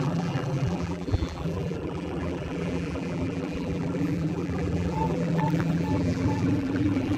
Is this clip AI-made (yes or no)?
yes